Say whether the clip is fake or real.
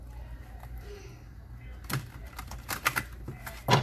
real